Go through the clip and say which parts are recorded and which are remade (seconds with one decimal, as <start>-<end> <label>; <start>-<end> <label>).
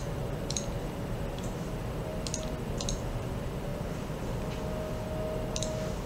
0.0-2.1 remade; 2.1-3.3 recorded; 3.3-6.1 remade